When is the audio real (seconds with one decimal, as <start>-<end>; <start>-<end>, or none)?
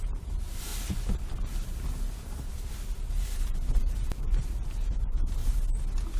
0.7-2.5; 5.4-6.2